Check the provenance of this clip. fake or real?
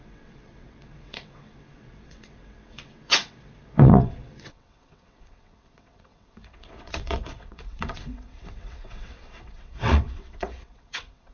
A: fake